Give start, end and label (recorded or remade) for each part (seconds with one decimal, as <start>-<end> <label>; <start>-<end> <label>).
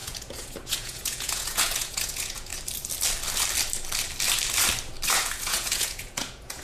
0.0-2.5 remade; 2.5-5.1 recorded; 5.1-6.6 remade